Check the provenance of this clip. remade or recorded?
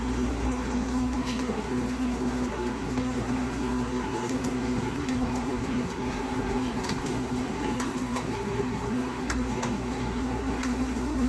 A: remade